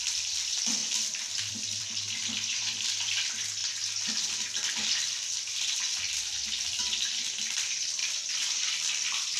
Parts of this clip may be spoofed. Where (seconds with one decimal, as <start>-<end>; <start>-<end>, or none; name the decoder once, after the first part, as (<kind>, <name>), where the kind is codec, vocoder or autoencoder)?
0.0-0.8 (vocoder, BigVGAN v2); 1.5-3.6; 5.8-8.0; 8.7-9.4